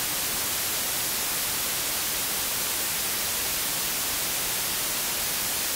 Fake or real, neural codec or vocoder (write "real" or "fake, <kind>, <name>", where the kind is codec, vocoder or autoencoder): real